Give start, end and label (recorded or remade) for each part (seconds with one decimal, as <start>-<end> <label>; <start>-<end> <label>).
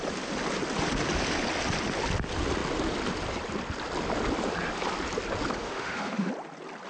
0.0-5.6 recorded; 5.6-6.3 remade; 6.3-6.9 recorded